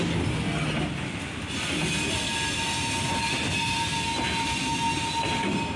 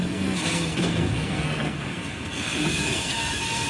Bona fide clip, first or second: first